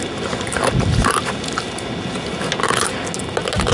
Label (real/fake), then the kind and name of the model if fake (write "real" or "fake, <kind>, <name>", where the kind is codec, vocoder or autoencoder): real